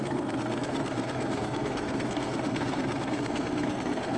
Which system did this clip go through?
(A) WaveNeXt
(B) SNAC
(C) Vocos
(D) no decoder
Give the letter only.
B